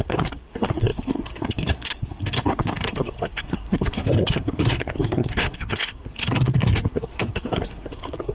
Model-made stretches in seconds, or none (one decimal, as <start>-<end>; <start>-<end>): 0.0-8.3